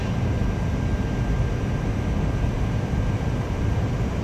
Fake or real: real